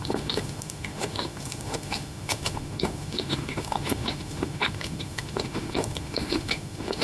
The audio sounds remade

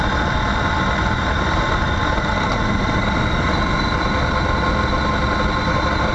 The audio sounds recorded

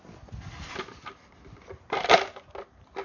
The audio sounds recorded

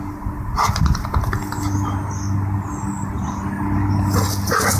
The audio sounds recorded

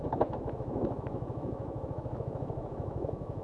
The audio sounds remade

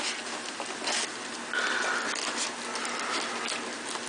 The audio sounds recorded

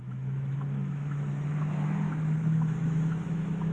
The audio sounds remade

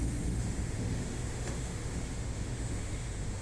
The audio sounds remade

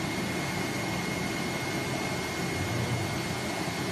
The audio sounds recorded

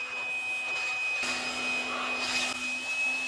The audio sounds recorded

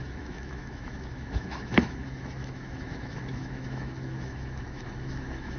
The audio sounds remade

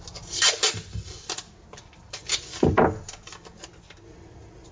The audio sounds recorded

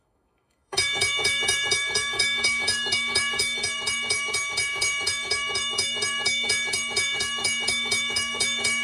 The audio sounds remade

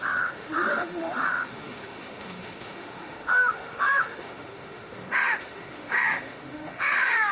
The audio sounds remade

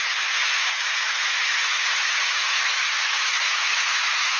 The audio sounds remade